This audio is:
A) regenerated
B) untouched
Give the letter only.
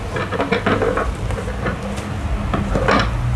B